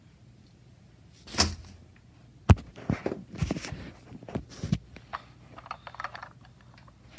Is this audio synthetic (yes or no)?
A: no